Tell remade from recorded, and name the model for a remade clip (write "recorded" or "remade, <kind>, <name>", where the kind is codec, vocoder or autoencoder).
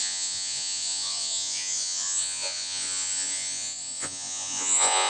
remade, vocoder, Vocos